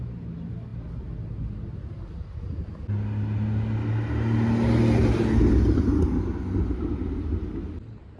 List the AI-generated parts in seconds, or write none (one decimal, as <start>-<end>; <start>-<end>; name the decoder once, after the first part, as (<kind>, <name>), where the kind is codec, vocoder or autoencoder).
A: none